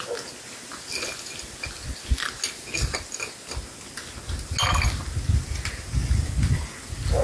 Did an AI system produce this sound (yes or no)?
no